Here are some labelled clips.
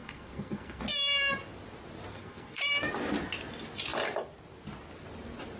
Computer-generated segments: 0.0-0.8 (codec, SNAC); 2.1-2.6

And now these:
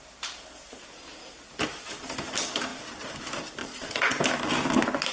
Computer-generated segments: 3.6-4.2 (vocoder, Vocos)

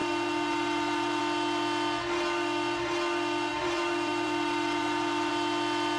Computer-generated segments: 0.0-1.2 (vocoder, BigVGAN v2); 3.5-5.3

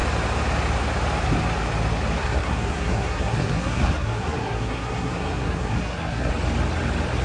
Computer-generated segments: 2.2-6.3 (codec, SNAC)

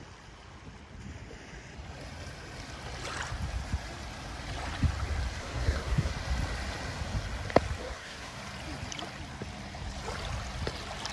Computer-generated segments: 5.4-6.1 (codec, SNAC); 7.8-8.4